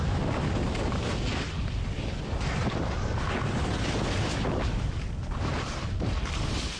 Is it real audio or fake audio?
real